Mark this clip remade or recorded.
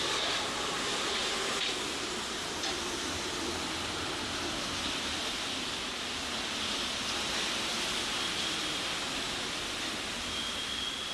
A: recorded